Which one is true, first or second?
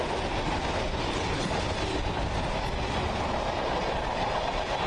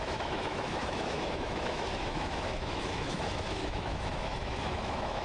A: first